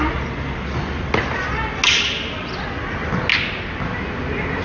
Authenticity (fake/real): real